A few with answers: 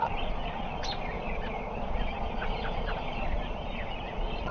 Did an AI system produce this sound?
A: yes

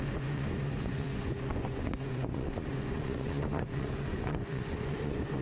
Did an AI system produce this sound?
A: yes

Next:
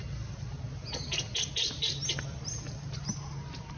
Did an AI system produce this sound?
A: no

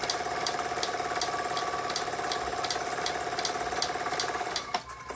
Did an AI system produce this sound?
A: no